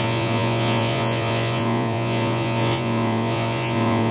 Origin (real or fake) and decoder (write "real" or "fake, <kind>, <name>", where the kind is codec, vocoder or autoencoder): fake, vocoder, Vocos